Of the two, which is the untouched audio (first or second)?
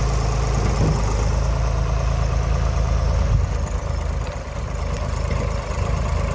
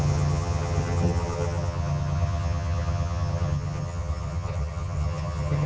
first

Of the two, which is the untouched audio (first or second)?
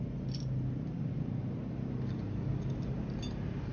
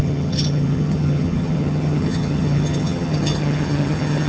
first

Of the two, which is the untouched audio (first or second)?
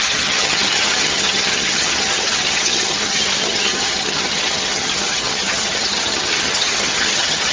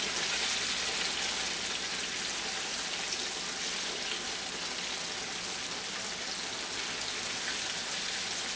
second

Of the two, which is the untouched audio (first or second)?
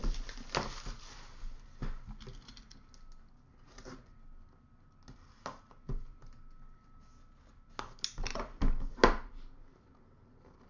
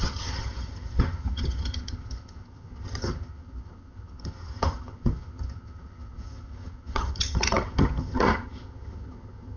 first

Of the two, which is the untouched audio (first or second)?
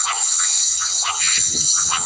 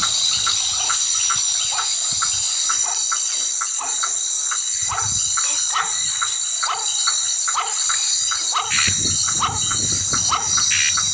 second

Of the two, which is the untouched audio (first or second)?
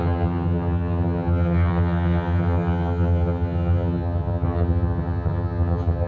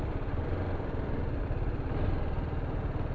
second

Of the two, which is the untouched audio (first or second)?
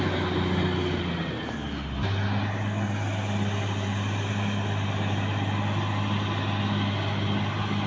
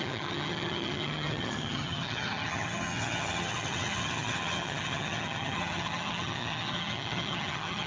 first